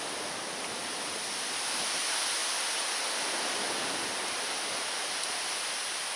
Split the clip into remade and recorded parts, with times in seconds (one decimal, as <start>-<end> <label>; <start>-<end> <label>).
0.0-6.2 recorded